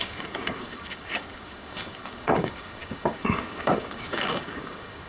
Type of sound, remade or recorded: remade